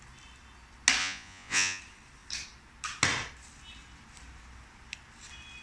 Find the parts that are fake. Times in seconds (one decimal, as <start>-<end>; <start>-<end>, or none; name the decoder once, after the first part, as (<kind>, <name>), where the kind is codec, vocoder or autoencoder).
1.0-1.8 (vocoder, Vocos)